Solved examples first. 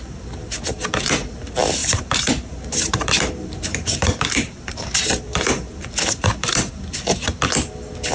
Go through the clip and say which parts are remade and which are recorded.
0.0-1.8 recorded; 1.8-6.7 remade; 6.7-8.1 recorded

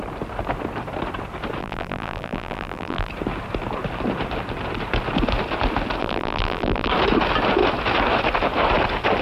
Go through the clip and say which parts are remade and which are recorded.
0.0-1.6 recorded; 1.6-3.1 remade; 3.1-6.0 recorded; 6.0-6.9 remade; 6.9-9.2 recorded

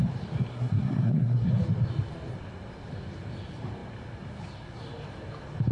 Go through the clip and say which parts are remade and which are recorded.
0.0-0.5 recorded; 0.5-1.5 remade; 1.5-5.7 recorded

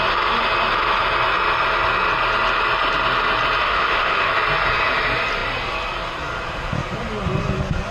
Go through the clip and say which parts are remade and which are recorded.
0.0-3.6 recorded; 3.6-4.3 remade; 4.3-7.9 recorded

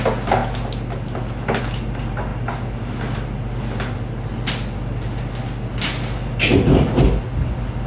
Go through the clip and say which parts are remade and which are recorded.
0.0-7.9 recorded

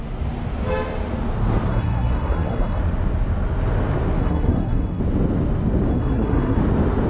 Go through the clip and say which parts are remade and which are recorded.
0.0-1.7 recorded; 1.7-2.8 remade; 2.8-4.2 recorded; 4.2-5.0 remade; 5.0-5.9 recorded; 5.9-6.6 remade; 6.6-7.1 recorded

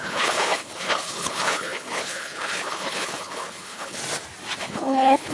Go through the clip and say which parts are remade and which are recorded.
0.0-4.0 remade; 4.0-4.6 recorded; 4.6-5.3 remade